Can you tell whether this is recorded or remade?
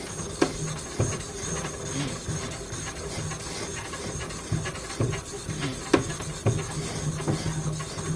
recorded